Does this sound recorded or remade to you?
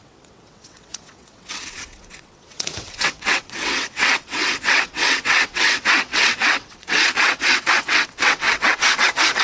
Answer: remade